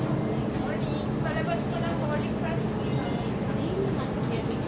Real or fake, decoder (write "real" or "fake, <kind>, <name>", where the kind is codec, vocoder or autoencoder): real